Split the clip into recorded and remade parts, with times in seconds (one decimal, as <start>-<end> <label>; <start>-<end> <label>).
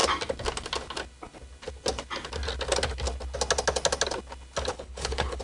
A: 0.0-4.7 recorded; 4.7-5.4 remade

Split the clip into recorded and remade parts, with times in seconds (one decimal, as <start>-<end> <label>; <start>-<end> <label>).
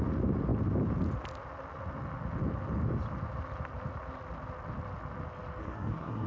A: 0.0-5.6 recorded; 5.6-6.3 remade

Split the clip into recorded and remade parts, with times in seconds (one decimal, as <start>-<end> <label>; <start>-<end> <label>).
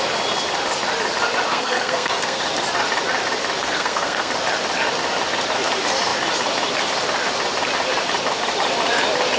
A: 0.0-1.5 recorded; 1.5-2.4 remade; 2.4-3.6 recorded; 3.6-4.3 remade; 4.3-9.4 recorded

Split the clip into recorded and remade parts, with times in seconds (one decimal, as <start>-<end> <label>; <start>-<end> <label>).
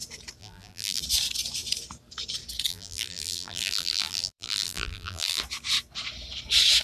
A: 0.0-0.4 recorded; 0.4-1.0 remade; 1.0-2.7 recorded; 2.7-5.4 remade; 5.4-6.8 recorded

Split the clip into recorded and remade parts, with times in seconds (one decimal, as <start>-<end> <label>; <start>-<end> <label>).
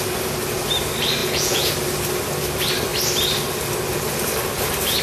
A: 0.0-1.2 recorded; 1.2-1.7 remade; 1.7-5.0 recorded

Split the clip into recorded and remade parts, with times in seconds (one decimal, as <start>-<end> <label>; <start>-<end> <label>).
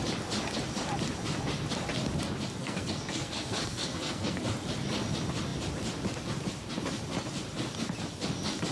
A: 0.0-2.6 recorded; 2.6-4.4 remade; 4.4-8.7 recorded